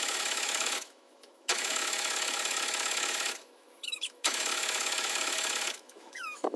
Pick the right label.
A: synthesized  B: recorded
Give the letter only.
A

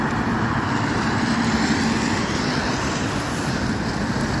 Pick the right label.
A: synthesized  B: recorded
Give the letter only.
A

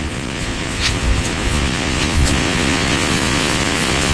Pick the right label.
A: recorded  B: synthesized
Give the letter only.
B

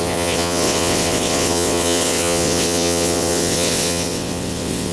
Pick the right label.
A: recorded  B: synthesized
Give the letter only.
B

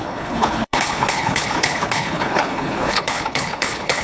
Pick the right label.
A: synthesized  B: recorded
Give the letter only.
A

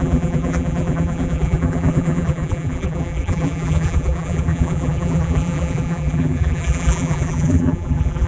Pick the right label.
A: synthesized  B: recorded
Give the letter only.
A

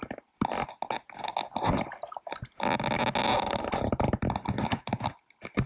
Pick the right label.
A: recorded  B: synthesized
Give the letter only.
A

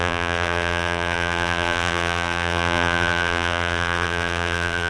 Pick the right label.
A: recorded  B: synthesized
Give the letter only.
B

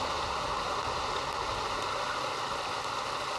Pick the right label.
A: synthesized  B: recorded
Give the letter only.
B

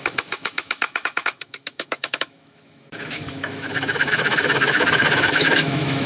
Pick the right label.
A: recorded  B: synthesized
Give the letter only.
B